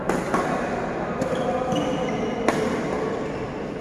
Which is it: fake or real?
real